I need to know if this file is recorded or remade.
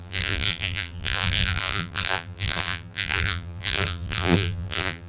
remade